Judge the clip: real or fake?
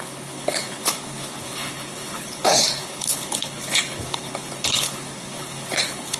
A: fake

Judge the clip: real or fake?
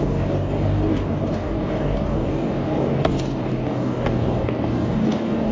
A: fake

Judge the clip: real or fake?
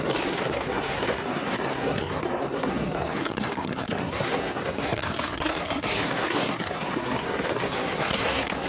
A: fake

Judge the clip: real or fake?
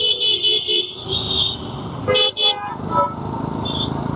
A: real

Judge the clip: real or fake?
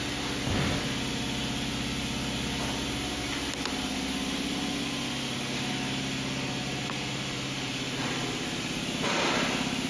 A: real